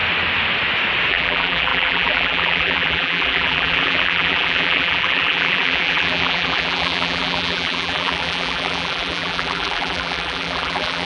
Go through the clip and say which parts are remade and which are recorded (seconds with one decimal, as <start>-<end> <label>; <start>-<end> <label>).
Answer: 0.0-1.1 recorded; 1.1-11.1 remade